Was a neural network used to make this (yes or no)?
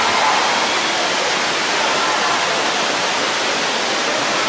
no